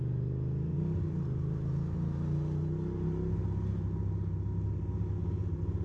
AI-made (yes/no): no